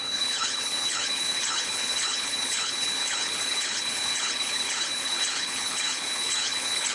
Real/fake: fake